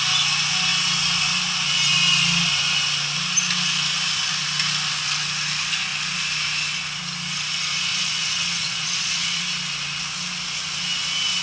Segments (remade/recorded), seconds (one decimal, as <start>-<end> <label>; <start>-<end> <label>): 0.0-7.9 recorded; 7.9-9.4 remade; 9.4-11.4 recorded